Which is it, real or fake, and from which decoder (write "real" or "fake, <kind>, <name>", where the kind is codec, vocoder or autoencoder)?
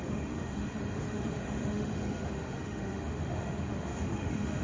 fake, autoencoder, DAC-VAE